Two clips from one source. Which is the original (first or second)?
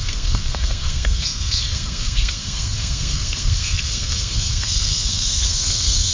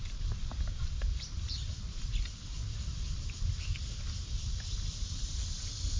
second